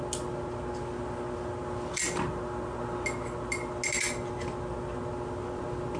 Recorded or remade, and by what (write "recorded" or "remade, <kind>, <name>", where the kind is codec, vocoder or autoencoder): recorded